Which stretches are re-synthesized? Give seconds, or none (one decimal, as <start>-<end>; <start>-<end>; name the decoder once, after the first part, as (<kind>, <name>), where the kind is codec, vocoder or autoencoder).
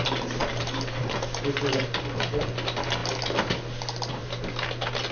none